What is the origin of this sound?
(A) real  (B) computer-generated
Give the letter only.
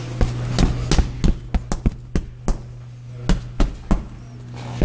A